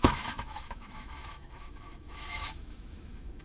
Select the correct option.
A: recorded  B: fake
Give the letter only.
B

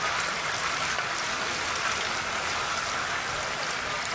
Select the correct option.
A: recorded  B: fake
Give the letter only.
A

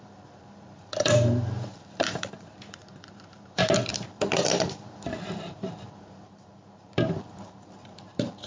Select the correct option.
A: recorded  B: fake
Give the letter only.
B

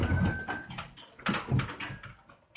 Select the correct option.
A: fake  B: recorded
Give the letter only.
B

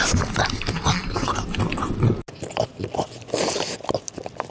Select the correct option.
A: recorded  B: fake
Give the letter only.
A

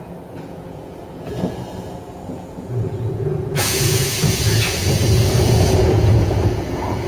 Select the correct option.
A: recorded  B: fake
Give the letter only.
B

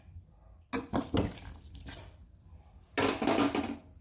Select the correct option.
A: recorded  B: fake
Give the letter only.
A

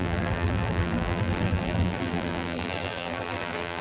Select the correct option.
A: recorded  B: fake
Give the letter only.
B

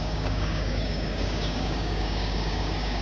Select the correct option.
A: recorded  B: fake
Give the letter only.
B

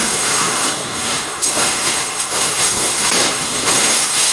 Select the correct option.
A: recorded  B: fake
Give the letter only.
B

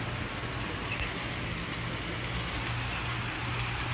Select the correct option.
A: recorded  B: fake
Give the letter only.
A